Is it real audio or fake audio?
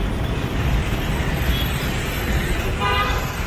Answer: real